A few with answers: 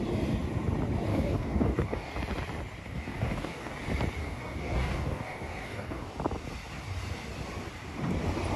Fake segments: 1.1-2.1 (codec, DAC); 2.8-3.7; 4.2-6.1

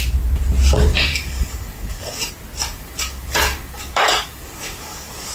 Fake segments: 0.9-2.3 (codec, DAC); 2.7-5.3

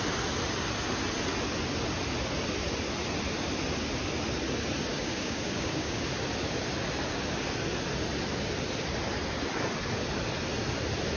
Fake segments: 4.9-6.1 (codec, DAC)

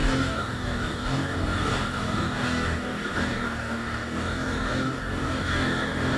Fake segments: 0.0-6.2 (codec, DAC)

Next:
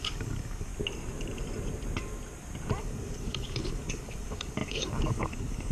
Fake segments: 0.0-0.7 (codec, DAC); 2.8-5.7

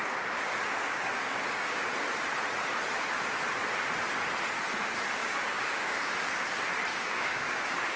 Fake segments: 0.9-1.9 (codec, DAC); 5.2-6.1; 6.9-7.6